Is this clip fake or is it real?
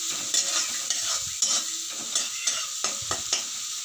real